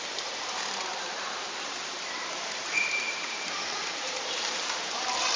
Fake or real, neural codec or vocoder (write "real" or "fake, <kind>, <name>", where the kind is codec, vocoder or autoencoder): fake, vocoder, BigVGAN v2